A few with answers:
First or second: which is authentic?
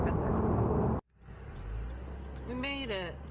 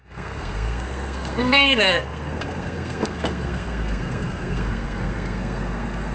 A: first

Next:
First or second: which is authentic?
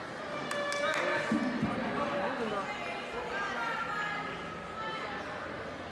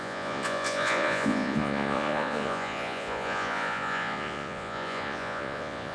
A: first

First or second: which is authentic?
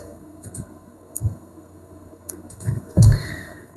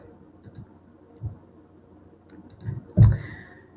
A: second